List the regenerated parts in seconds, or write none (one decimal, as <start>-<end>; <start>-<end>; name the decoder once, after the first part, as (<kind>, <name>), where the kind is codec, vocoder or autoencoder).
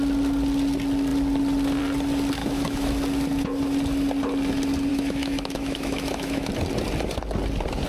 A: 2.4-2.9 (autoencoder, DAC-VAE); 4.9-6.5